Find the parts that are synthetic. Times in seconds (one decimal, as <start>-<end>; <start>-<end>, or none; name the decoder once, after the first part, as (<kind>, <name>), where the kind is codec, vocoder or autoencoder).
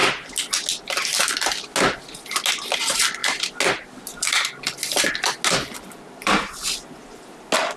none